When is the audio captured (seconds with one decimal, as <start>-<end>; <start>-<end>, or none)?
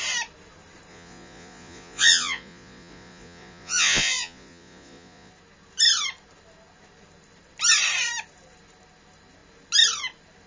0.0-0.9; 5.3-10.5